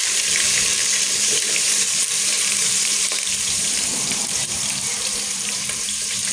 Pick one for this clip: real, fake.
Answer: fake